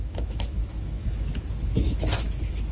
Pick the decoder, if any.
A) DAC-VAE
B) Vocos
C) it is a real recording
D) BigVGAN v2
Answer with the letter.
A